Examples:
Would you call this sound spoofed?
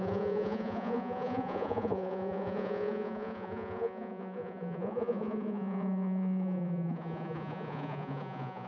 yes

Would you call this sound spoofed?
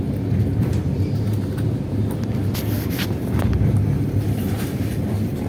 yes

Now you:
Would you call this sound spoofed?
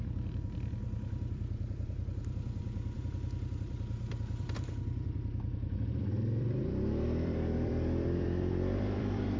yes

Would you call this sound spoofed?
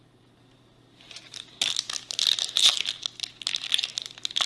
no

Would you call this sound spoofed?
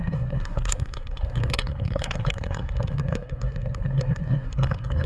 yes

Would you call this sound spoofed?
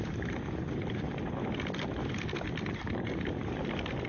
no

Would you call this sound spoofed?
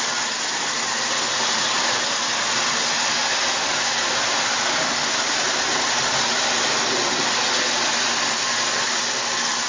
no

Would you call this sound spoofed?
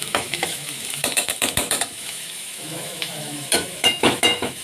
yes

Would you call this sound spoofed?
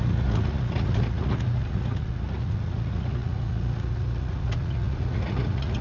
yes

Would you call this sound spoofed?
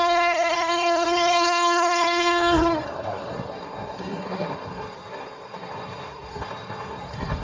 yes